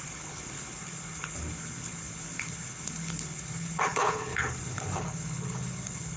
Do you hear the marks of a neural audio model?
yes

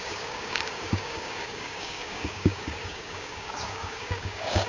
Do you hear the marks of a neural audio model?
yes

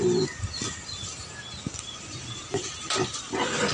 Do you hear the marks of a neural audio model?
no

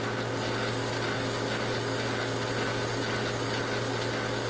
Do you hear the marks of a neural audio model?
no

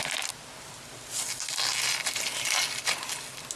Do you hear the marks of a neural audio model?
no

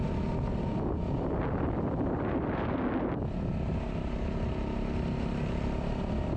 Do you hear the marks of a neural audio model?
no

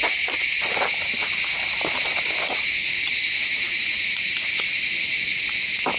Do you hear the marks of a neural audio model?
no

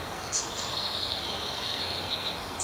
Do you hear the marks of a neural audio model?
yes